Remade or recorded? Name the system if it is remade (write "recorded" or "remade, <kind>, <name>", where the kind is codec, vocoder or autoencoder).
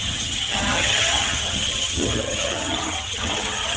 remade, vocoder, HiFi-GAN